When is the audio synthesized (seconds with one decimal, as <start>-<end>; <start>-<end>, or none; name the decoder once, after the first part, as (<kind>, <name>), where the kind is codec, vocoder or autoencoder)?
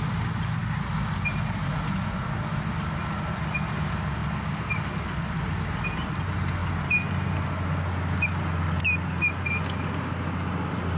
none